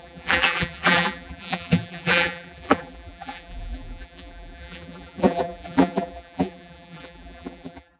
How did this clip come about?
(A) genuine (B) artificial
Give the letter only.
B